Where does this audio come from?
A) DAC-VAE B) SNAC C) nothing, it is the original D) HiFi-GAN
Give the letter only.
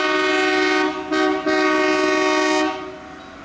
C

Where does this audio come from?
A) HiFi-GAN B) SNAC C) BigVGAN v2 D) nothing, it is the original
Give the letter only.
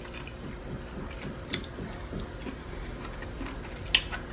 D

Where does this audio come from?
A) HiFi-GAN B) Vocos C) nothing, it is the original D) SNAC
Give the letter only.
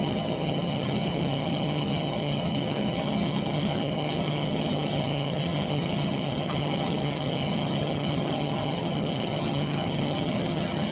A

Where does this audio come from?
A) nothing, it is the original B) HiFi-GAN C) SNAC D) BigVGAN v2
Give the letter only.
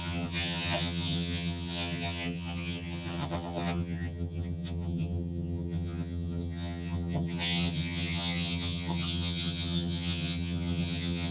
B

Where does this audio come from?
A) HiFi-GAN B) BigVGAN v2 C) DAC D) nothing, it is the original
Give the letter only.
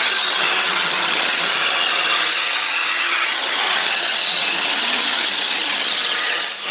A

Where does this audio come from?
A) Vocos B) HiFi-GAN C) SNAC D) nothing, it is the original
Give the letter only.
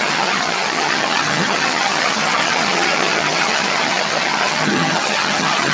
B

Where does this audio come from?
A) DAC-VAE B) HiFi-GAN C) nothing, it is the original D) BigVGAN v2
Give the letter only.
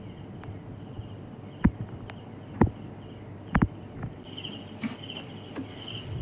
C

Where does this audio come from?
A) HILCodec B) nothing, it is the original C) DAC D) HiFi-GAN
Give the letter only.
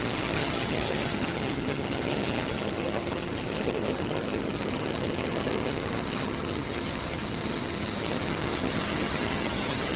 D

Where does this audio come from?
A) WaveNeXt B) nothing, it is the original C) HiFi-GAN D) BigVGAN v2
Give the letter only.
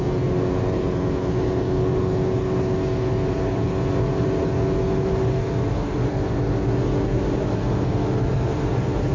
B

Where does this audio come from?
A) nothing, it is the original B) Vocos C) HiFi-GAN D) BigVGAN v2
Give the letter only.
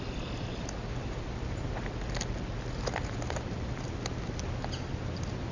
A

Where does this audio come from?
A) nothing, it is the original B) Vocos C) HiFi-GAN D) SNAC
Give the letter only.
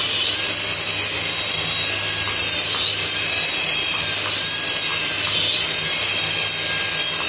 A